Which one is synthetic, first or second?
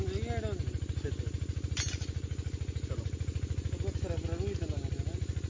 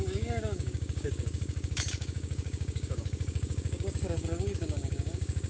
second